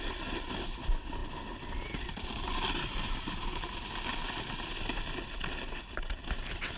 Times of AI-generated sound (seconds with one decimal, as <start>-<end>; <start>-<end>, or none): none